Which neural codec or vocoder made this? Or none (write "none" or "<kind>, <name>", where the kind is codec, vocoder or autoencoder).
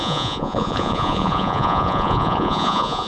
vocoder, Vocos